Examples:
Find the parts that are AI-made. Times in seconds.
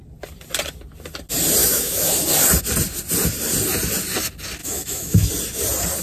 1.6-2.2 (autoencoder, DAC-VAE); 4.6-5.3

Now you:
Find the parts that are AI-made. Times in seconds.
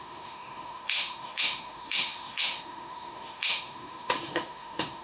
0.0-5.0 (autoencoder, DAC-VAE)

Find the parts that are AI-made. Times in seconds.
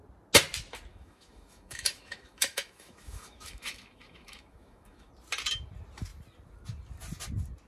0.9-5.1 (autoencoder, DAC-VAE)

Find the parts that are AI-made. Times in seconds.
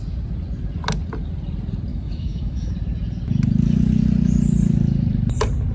1.9-2.7 (autoencoder, DAC-VAE)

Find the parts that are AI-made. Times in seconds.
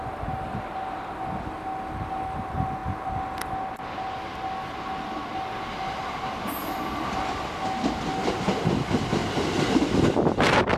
none